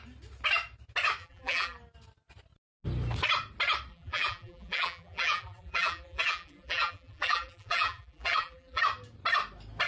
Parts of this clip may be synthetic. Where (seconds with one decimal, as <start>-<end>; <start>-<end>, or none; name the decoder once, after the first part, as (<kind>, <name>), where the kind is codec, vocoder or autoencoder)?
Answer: 1.2-1.8 (vocoder, BigVGAN v2); 3.9-8.8